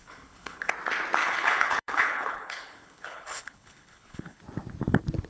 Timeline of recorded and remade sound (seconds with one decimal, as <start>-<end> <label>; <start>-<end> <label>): 0.0-0.7 remade; 0.7-1.2 recorded; 1.2-4.4 remade; 4.4-5.3 recorded